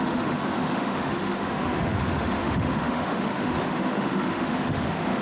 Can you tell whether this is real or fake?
fake